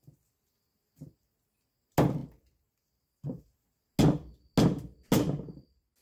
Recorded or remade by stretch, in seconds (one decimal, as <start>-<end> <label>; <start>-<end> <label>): 0.0-6.0 recorded

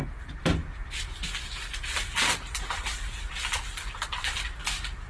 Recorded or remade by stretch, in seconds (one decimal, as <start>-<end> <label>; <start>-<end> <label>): 0.0-5.1 recorded